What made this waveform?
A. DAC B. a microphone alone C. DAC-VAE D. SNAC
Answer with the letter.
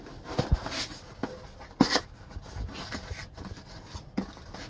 B